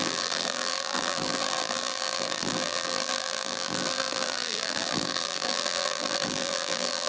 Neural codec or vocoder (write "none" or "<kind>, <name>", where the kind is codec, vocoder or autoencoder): vocoder, BigVGAN v2